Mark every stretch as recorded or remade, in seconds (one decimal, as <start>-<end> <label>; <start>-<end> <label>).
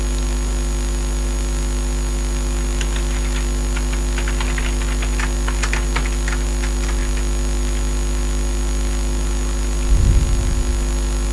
0.0-11.3 recorded